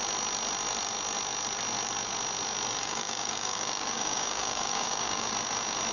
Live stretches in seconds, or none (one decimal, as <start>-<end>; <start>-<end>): 0.0-2.8; 5.3-5.9